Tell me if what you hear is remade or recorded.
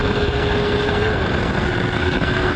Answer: remade